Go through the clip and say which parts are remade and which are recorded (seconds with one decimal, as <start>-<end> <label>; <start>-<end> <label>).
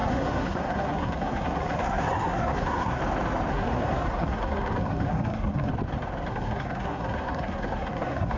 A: 0.0-3.0 remade; 3.0-3.5 recorded; 3.5-5.7 remade; 5.7-6.3 recorded; 6.3-8.4 remade